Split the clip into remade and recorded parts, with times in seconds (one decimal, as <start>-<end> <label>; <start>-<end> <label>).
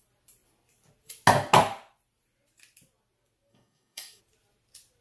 0.0-3.5 recorded; 3.5-4.2 remade; 4.2-5.0 recorded